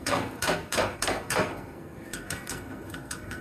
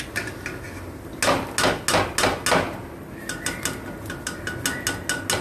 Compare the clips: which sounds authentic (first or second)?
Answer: second